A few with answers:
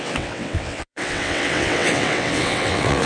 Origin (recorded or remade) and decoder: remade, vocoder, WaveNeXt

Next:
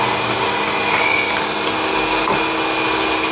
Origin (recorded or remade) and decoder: recorded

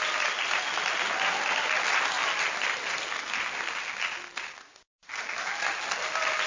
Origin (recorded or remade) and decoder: recorded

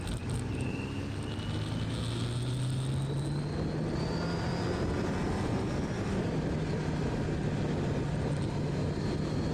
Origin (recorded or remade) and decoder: recorded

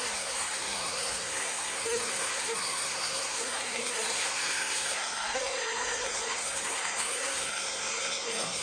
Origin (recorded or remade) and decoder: remade, codec, SNAC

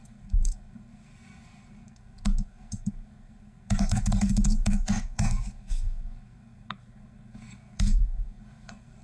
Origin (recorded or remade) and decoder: remade, codec, SNAC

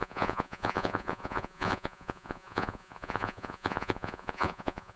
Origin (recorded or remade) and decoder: remade, vocoder, Vocos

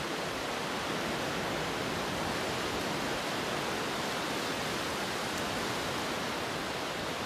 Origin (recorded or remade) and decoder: recorded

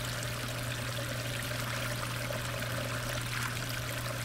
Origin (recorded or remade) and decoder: remade, vocoder, BigVGAN v2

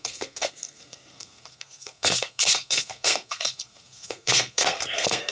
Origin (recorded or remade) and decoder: remade, codec, SNAC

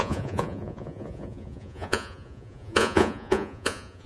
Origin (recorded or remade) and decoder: remade, vocoder, Vocos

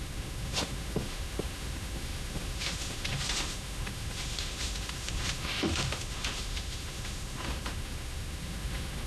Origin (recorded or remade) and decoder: remade, autoencoder, DAC-VAE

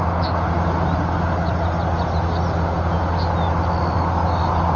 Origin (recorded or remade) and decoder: recorded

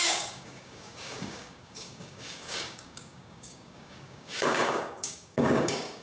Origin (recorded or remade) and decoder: remade, codec, DAC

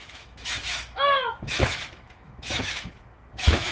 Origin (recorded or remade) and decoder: remade, autoencoder, DAC-VAE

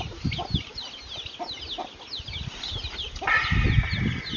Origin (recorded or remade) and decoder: recorded